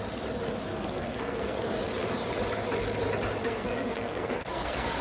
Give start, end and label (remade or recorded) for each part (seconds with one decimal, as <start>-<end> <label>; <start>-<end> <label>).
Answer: 0.0-0.7 recorded; 0.7-1.6 remade; 1.6-3.4 recorded; 3.4-5.0 remade